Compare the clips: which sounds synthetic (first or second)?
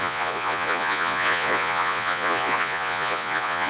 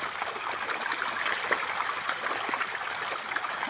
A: first